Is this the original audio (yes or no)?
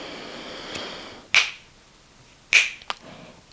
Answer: yes